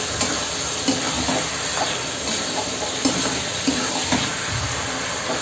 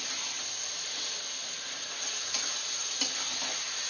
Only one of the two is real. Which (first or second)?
second